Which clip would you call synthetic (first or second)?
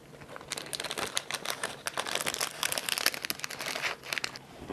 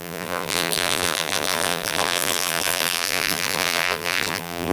second